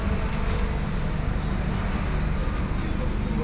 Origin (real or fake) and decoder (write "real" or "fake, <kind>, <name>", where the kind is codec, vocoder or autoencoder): real